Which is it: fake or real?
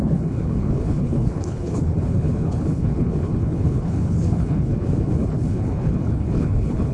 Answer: fake